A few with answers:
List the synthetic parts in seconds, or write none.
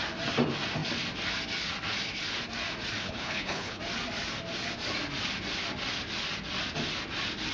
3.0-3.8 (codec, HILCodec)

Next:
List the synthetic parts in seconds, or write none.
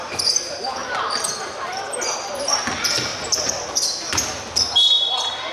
none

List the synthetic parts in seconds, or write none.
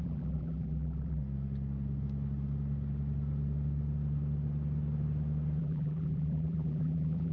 0.0-1.2 (vocoder, BigVGAN v2); 5.6-7.3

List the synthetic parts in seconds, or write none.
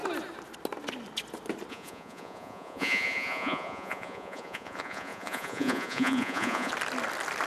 1.7-6.7 (vocoder, Vocos)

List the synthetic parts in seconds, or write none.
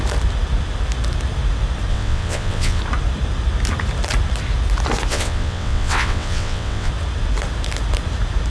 1.9-2.8 (vocoder, WaveNeXt); 5.1-6.9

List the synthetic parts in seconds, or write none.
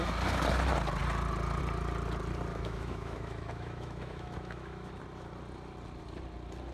2.5-4.9 (autoencoder, DAC-VAE)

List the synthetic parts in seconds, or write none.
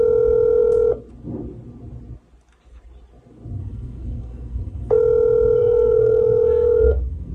3.6-4.9 (codec, SNAC); 5.6-7.3